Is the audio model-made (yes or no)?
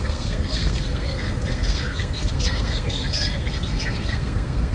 yes